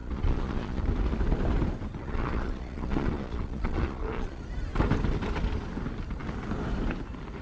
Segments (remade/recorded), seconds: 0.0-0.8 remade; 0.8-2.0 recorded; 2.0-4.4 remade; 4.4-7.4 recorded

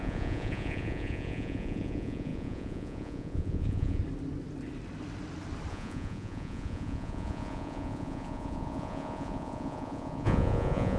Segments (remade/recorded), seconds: 0.0-4.0 remade; 4.0-5.7 recorded; 5.7-11.0 remade

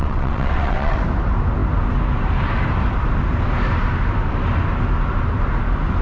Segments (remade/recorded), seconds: 0.0-1.0 remade; 1.0-6.0 recorded

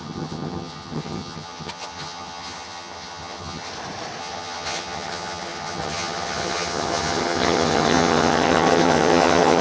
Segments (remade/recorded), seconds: 0.0-3.7 remade; 3.7-4.2 recorded; 4.2-9.6 remade